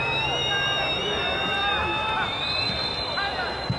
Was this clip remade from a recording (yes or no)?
no